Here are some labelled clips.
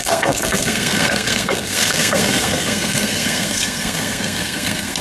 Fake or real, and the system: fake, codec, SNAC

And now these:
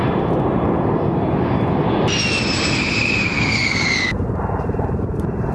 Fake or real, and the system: real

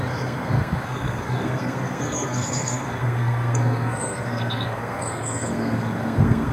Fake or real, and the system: fake, codec, SNAC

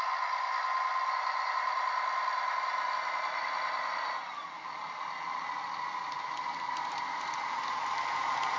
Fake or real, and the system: real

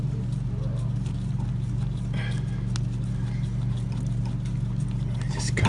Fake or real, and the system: real